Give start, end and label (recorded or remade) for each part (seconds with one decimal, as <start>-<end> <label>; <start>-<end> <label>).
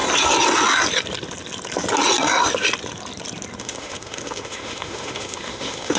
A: 0.0-3.6 recorded; 3.6-6.0 remade